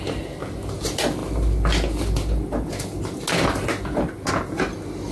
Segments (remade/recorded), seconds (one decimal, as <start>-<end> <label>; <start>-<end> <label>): 0.0-5.1 recorded